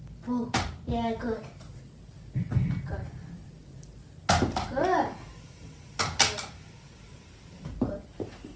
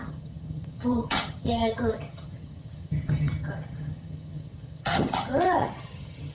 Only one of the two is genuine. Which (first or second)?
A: first